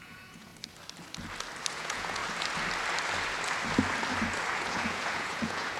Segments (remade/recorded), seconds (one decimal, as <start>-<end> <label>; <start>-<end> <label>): 0.0-0.5 remade; 0.5-1.7 recorded; 1.7-2.2 remade; 2.2-4.5 recorded; 4.5-5.8 remade